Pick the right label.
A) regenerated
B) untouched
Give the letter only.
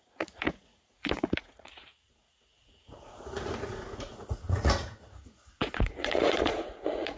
A